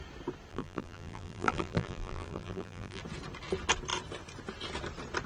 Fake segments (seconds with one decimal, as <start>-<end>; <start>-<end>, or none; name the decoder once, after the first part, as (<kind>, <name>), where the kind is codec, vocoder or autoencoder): 0.5-3.0 (vocoder, BigVGAN v2)

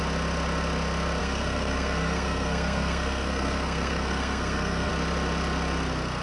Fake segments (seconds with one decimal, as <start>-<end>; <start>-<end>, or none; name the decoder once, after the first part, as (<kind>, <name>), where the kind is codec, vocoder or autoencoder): 1.2-4.9 (codec, SNAC)

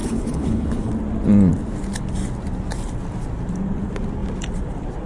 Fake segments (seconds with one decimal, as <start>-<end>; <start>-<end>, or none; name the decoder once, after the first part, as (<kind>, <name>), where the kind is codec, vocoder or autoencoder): 0.0-0.9 (codec, HILCodec)

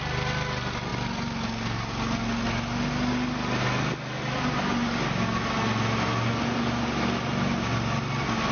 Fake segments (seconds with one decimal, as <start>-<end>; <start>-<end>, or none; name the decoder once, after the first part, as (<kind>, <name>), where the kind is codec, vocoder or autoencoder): none

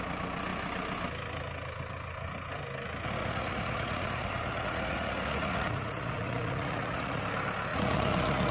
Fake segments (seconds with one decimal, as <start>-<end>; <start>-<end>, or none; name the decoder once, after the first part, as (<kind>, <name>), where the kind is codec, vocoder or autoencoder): 3.2-7.2 (vocoder, Vocos); 7.7-8.5

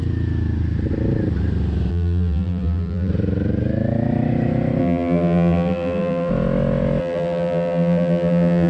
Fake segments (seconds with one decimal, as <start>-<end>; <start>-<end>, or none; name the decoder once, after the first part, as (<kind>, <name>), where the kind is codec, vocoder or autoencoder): 1.9-3.1 (vocoder, BigVGAN v2); 4.8-6.3; 7.0-8.7